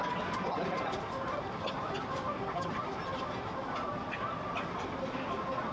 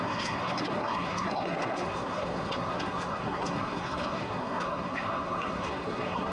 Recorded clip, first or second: first